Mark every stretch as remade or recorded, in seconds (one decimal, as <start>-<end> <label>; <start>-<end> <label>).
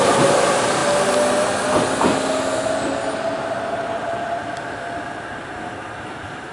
0.0-0.8 remade; 0.8-4.7 recorded; 4.7-6.5 remade